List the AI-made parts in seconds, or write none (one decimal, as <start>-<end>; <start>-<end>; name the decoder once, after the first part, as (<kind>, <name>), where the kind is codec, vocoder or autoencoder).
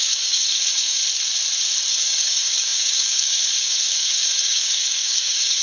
0.0-1.0 (codec, DAC); 1.9-5.6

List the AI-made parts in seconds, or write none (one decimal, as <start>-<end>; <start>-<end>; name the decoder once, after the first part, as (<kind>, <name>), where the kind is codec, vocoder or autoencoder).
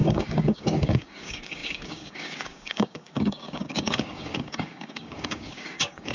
0.0-6.1 (codec, DAC)